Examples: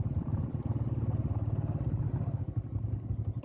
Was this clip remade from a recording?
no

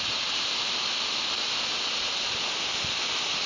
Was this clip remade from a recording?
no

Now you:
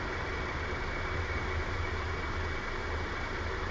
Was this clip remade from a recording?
no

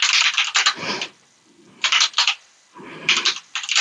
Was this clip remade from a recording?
no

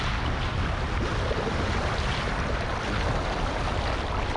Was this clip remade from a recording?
no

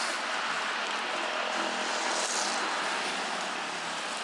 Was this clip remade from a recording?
no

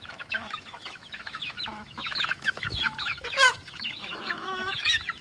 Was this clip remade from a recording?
yes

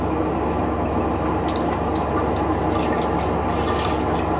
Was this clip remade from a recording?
no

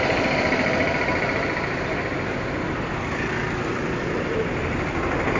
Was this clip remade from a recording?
no